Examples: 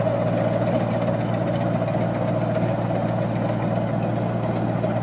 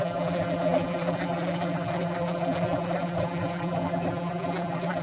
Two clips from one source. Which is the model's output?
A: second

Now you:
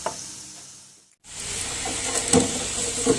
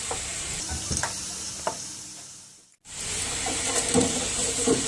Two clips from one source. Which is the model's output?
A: second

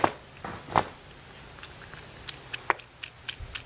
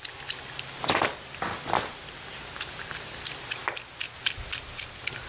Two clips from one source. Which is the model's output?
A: second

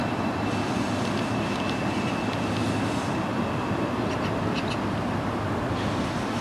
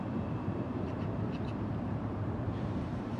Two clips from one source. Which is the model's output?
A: second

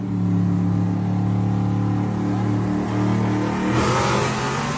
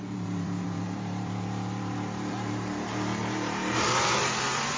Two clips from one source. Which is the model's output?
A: second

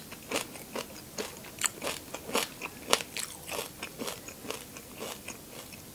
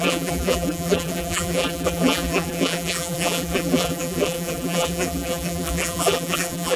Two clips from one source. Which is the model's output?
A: second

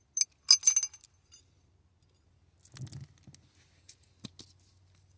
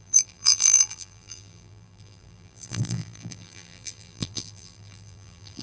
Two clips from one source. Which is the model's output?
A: second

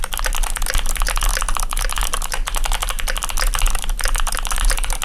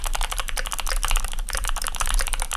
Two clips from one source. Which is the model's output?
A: second